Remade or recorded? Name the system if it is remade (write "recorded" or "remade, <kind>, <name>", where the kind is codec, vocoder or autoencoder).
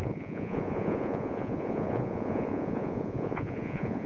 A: remade, vocoder, Vocos